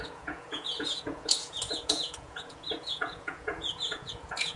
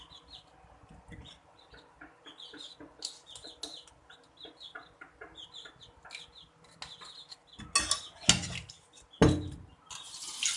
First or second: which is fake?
first